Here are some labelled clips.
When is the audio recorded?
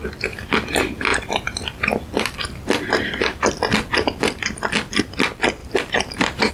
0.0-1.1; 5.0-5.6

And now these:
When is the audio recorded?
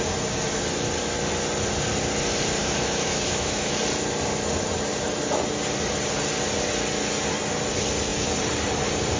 0.0-2.6; 3.8-9.2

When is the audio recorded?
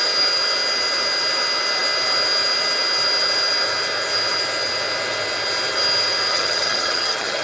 0.0-6.3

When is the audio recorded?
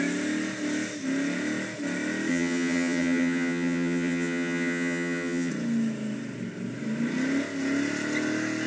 0.0-2.3; 5.5-8.7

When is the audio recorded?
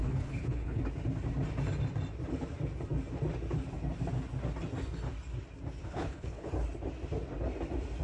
0.8-5.8; 6.5-8.0